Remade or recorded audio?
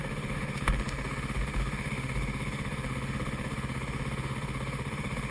remade